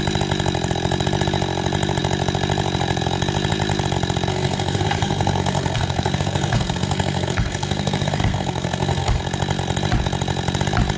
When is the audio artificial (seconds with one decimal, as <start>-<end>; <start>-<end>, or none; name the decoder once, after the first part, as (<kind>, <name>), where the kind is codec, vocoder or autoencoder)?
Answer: 4.3-9.2 (codec, SNAC)